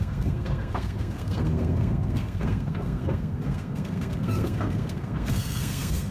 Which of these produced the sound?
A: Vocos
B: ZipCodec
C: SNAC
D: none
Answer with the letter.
C